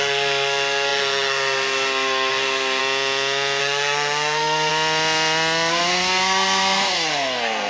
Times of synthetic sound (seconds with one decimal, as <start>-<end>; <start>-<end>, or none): 0.0-2.8; 3.6-4.7; 5.7-7.7